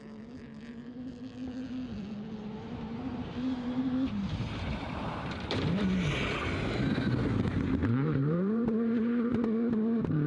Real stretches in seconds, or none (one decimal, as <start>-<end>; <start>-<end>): 0.0-2.4; 5.8-7.8; 9.3-10.3